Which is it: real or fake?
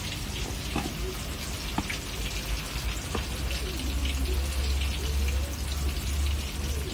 real